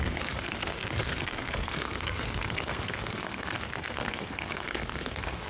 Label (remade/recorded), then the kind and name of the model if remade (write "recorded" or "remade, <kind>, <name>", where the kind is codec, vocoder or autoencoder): remade, codec, SNAC